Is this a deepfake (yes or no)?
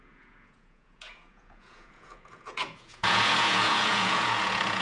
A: yes